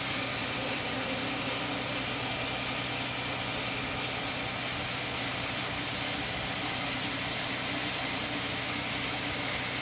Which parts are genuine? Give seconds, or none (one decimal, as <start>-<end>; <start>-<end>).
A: 0.0-0.4; 1.1-5.3; 6.6-9.8